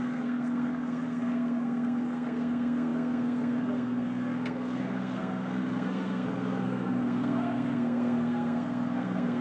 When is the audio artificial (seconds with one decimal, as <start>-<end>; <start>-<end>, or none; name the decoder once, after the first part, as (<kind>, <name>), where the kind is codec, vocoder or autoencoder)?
0.0-9.4 (codec, SNAC)